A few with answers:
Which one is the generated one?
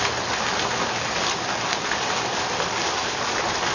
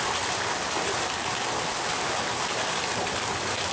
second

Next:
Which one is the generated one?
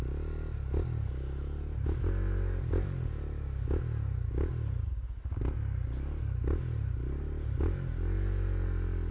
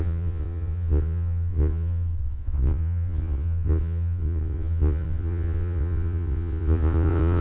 second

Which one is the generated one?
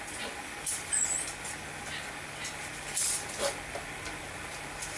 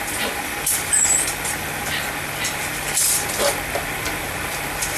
second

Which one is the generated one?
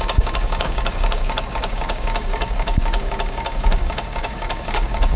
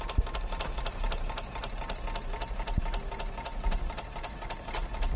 first